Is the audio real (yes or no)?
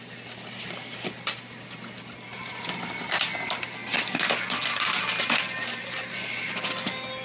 yes